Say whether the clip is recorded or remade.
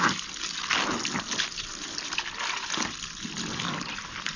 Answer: recorded